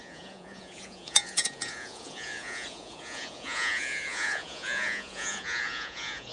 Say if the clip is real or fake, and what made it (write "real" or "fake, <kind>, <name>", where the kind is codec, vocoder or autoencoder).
fake, vocoder, Vocos